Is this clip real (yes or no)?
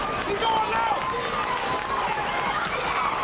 yes